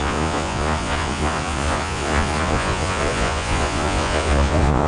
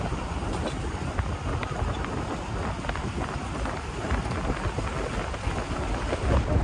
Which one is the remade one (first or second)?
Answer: first